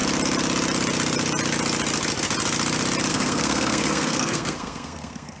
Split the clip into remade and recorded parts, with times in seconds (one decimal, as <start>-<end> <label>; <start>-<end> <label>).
0.0-3.1 recorded; 3.1-5.4 remade